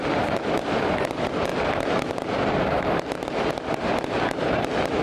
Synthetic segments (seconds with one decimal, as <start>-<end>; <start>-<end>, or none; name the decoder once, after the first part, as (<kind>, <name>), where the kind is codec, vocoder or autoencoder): none